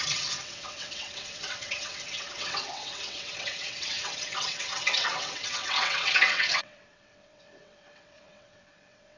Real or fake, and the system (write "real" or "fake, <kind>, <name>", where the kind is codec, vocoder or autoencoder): fake, vocoder, WaveNeXt